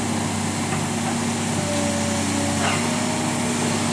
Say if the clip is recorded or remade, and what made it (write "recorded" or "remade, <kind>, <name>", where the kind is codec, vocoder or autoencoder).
recorded